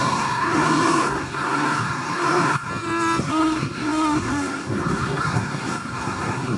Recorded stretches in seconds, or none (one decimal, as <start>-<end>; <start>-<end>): 2.7-3.2